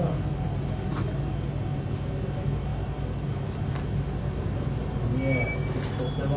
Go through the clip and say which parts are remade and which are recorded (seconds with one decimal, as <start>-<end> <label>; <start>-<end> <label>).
0.0-6.4 recorded